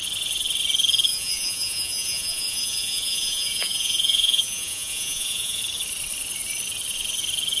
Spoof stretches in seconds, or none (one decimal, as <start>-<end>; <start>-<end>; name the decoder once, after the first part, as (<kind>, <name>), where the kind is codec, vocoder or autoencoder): 1.1-5.6 (vocoder, Vocos)